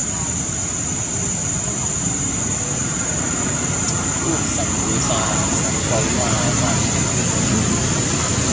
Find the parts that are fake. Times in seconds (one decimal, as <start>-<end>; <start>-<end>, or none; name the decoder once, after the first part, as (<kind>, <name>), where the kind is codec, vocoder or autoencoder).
0.0-2.2 (vocoder, BigVGAN v2)